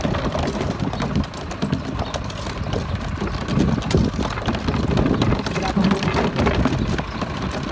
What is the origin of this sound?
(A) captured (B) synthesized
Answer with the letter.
A